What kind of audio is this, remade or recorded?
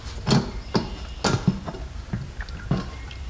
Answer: recorded